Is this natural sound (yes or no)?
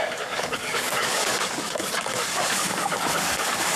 no